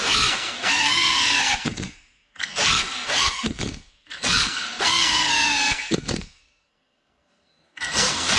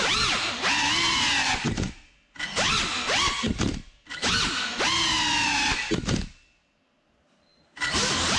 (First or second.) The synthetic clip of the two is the first